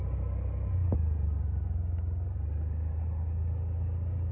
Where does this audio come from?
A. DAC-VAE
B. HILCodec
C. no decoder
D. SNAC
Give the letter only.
C